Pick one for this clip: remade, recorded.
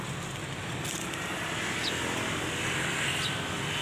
recorded